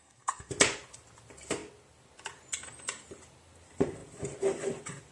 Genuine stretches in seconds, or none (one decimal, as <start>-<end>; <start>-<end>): 0.5-5.1